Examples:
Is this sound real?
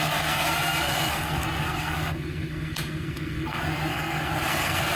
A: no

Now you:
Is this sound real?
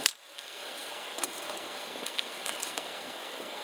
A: no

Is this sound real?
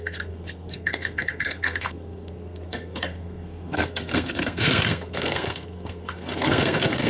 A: no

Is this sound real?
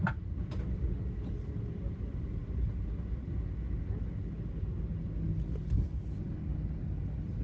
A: yes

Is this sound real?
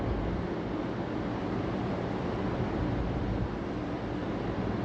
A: yes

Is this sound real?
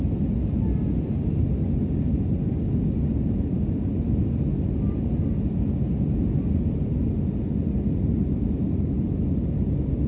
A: yes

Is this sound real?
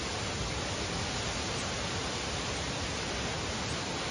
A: yes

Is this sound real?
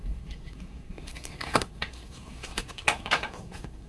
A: no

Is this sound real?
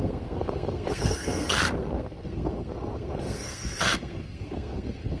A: no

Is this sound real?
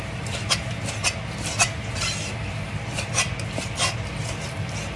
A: yes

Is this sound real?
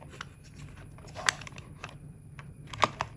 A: yes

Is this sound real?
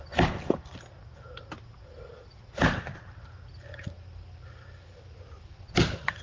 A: yes